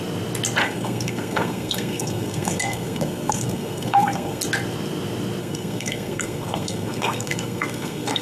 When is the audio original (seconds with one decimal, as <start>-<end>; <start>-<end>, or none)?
0.0-0.6; 4.4-5.4